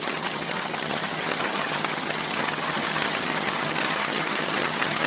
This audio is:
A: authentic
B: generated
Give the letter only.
B